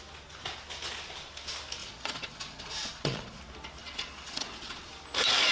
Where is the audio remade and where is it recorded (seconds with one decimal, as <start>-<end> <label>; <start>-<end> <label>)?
0.0-1.8 recorded; 1.8-3.4 remade; 3.4-3.8 recorded; 3.8-4.9 remade; 4.9-5.5 recorded